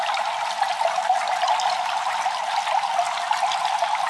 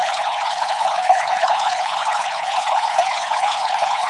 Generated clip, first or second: second